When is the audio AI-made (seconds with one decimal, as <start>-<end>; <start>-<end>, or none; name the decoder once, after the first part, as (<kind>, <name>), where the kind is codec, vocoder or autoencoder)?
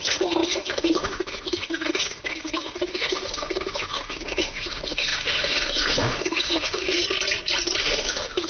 0.0-7.0 (autoencoder, DAC-VAE); 7.8-8.5